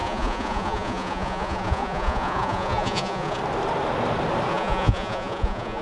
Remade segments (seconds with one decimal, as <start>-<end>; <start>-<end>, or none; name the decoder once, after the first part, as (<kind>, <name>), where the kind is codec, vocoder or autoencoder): 0.0-3.4 (vocoder, Vocos); 4.5-5.8